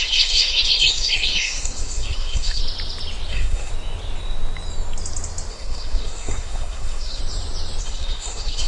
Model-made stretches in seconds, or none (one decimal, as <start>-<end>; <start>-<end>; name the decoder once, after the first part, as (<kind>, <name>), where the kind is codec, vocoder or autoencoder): 0.0-2.6 (codec, SNAC); 3.3-3.7; 5.5-7.2; 7.8-8.7